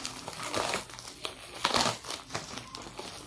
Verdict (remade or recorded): recorded